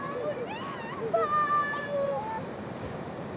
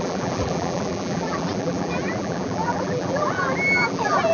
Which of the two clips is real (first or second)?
first